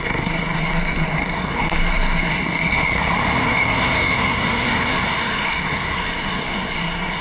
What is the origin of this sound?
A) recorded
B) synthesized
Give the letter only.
B